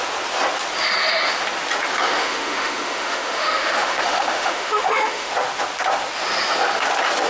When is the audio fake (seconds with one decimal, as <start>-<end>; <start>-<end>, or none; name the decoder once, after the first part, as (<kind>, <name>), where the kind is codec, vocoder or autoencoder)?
2.1-5.3 (autoencoder, DAC-VAE)